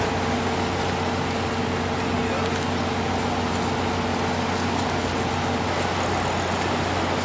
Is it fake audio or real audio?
real